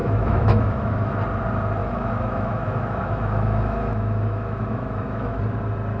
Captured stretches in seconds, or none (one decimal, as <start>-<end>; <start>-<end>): 1.1-1.8; 5.4-6.0